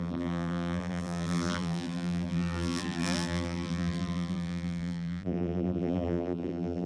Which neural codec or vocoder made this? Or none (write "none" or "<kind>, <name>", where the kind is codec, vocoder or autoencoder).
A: vocoder, BigVGAN v2